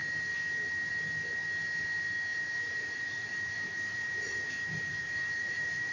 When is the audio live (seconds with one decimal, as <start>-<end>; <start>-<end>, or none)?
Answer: 0.0-2.3